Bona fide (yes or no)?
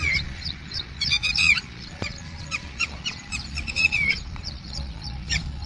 no